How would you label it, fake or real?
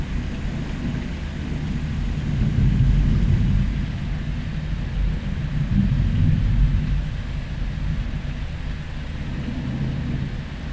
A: real